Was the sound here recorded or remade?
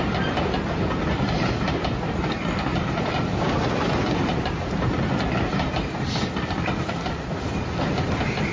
recorded